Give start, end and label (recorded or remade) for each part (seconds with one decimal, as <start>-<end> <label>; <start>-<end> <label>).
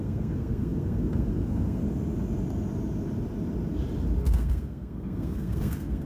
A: 0.0-1.8 remade; 1.8-4.2 recorded; 4.2-6.1 remade